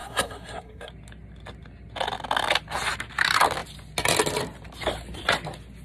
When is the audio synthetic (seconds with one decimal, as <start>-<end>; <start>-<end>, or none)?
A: 0.0-0.9